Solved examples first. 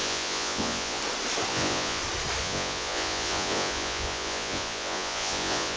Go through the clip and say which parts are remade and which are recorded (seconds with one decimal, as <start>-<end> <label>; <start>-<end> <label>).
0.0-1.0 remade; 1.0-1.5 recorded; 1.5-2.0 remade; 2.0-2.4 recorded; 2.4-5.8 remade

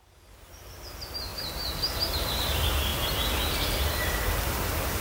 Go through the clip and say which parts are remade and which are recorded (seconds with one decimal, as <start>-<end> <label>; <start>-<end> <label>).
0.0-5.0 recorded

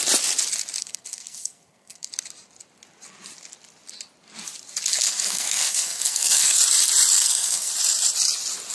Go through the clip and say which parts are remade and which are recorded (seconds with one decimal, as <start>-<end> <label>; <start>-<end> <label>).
0.0-0.8 recorded; 0.8-2.1 remade; 2.1-4.9 recorded; 4.9-6.6 remade; 6.6-7.2 recorded; 7.2-7.7 remade; 7.7-8.7 recorded

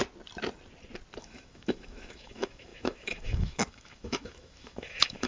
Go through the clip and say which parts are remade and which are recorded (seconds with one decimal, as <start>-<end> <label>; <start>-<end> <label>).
0.0-1.2 recorded; 1.2-5.3 remade

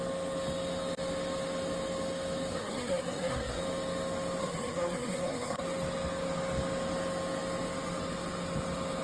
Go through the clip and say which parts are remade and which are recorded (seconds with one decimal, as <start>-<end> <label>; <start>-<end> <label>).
0.0-2.5 recorded; 2.5-3.6 remade; 3.6-4.4 recorded; 4.4-5.6 remade; 5.6-9.0 recorded